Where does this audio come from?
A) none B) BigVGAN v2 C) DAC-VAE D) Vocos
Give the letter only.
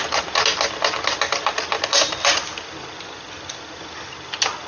A